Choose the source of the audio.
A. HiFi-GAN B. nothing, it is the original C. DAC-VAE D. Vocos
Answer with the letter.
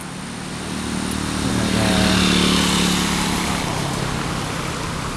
B